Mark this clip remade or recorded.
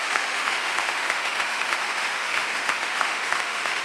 remade